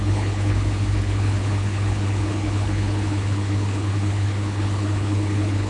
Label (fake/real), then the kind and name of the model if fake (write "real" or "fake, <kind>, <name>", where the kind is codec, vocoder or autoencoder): fake, codec, HILCodec